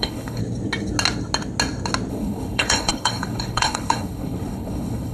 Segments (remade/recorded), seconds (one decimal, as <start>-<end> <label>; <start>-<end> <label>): 0.0-0.4 remade; 0.4-2.1 recorded; 2.1-5.1 remade